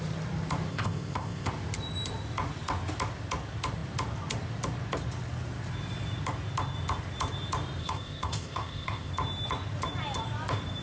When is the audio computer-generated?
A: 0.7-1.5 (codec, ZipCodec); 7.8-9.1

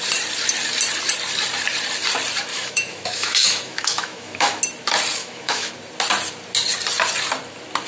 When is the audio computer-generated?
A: 2.5-4.6 (autoencoder, DAC-VAE); 5.2-5.7

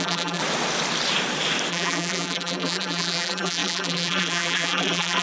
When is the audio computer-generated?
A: 0.0-0.4 (vocoder, BigVGAN v2); 1.7-5.2

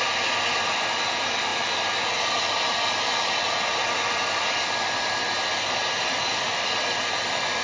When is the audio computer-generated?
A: none

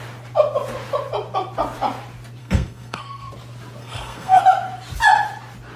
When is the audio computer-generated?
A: 2.4-3.3 (codec, SNAC); 3.8-4.4

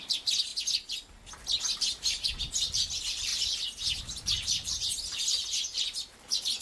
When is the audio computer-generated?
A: 0.0-0.5 (vocoder, BigVGAN v2); 1.6-3.3; 4.0-6.6

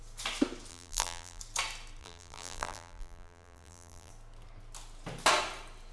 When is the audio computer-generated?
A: 0.7-1.4 (vocoder, BigVGAN v2); 2.0-4.1

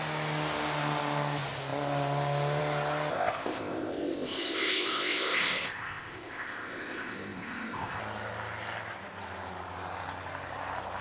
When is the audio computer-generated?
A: 3.1-8.0 (codec, ZipCodec)